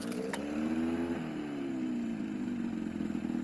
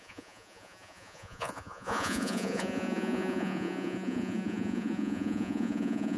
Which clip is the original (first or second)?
first